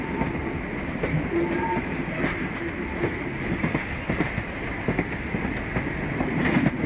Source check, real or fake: real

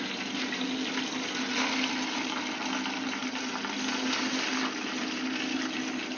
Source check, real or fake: real